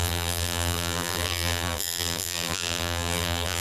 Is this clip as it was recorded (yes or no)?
no